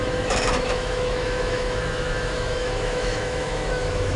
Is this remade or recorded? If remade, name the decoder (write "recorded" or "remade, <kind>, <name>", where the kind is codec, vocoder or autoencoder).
remade, autoencoder, DAC-VAE